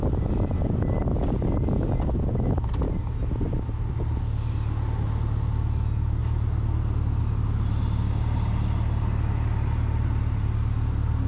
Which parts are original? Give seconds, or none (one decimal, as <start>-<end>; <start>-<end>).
0.0-11.3